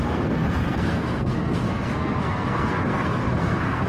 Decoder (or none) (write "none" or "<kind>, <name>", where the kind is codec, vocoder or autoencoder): codec, SNAC